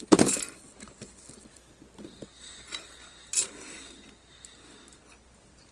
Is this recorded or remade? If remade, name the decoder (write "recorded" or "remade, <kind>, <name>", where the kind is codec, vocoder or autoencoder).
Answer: recorded